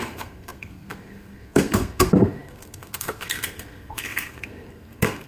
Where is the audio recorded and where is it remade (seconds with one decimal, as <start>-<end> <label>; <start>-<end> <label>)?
0.0-5.3 remade